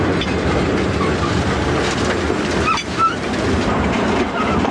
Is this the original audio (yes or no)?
yes